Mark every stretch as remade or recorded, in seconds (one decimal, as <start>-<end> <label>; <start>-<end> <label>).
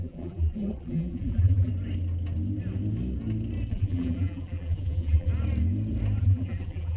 0.0-1.7 remade; 1.7-3.7 recorded; 3.7-5.3 remade; 5.3-6.2 recorded; 6.2-7.0 remade